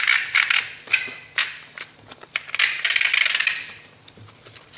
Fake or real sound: real